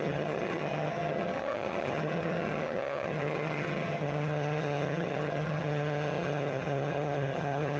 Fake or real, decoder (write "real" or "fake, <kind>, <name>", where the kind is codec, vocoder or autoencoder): fake, vocoder, HiFi-GAN